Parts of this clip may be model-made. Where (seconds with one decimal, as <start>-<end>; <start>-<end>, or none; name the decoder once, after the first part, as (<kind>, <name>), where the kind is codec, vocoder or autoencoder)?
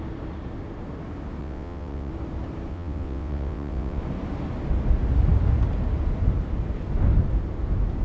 1.4-2.1 (vocoder, WaveNeXt); 2.7-4.0